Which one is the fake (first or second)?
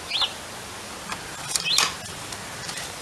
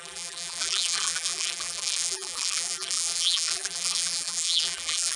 second